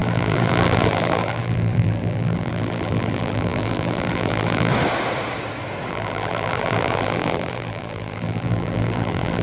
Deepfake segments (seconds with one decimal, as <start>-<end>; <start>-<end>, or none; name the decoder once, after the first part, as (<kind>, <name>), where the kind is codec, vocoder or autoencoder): 0.0-4.7 (vocoder, BigVGAN v2); 5.9-9.4